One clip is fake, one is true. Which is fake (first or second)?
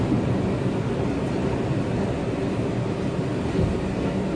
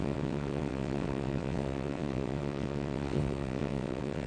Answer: second